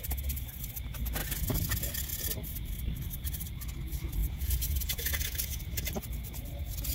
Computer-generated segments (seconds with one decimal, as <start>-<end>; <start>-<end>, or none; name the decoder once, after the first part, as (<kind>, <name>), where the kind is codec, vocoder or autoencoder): 4.2-5.6 (vocoder, Vocos)